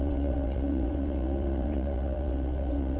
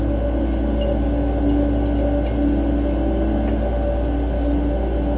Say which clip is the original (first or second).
second